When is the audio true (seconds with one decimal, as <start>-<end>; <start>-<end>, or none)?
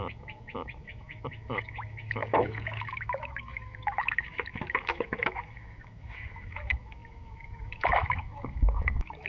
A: none